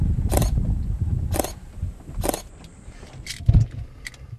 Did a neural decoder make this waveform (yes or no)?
no